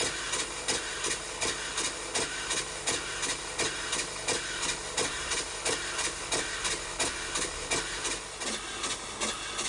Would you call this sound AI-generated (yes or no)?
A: no